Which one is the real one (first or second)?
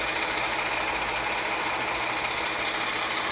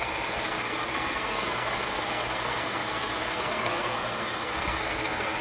first